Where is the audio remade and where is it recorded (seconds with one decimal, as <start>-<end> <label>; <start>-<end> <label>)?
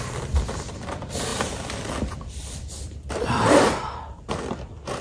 0.0-5.0 remade